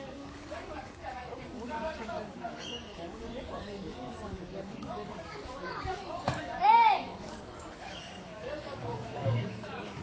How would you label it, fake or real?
fake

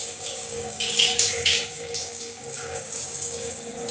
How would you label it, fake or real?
fake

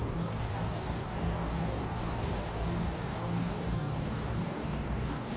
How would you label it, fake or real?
fake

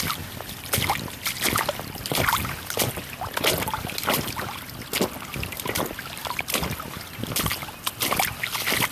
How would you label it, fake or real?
real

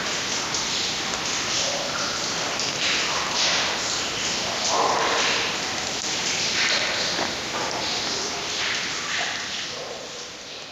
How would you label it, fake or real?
real